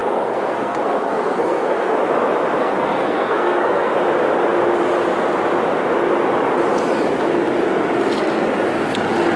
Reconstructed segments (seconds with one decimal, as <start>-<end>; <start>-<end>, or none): 0.0-1.9; 2.6-3.9